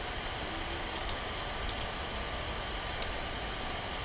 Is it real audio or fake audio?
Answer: fake